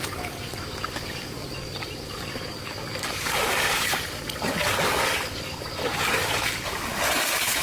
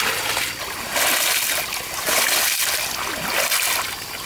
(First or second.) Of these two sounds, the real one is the second